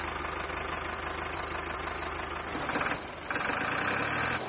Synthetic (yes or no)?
no